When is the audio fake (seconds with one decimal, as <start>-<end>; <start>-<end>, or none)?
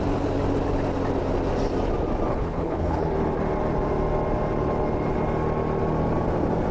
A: 2.3-3.1